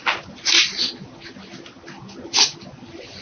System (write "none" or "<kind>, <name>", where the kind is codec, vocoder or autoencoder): none